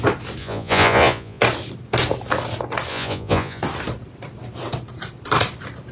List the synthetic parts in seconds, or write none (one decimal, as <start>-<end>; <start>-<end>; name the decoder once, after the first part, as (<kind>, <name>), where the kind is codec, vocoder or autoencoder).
0.4-1.4 (vocoder, Vocos); 2.9-3.6